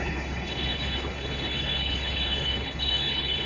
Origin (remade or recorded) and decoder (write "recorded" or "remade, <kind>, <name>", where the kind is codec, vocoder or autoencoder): remade, codec, HILCodec